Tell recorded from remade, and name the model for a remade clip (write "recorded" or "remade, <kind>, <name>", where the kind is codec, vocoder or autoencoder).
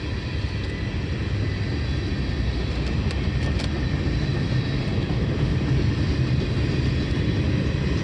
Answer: recorded